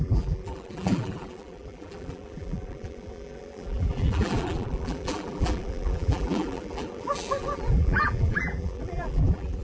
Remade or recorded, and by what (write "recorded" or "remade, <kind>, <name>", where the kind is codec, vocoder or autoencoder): remade, vocoder, BigVGAN v2